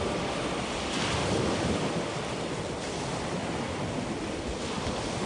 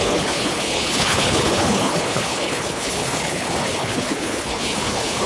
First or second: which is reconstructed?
second